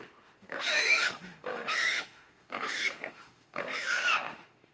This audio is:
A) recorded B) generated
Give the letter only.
B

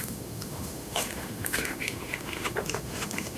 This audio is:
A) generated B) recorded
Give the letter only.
A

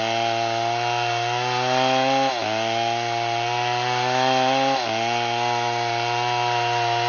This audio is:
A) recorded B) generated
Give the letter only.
A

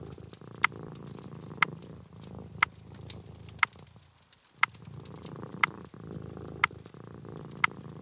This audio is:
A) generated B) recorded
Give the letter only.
B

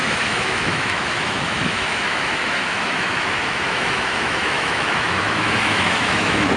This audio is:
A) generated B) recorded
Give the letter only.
A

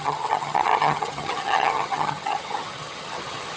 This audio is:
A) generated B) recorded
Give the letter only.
A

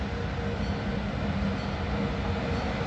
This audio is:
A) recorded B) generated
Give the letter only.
A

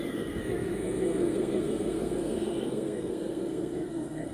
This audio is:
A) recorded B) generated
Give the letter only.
B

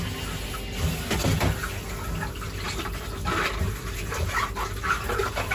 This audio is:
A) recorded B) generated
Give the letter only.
A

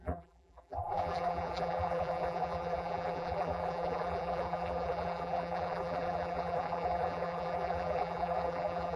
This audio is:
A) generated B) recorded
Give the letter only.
A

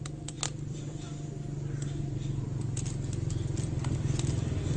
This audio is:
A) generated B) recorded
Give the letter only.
B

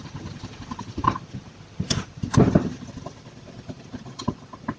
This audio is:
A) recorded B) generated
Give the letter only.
A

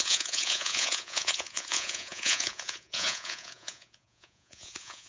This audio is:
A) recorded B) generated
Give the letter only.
B